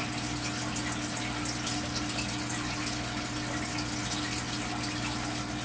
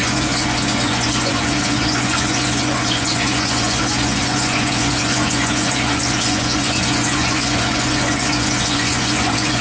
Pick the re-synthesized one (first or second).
second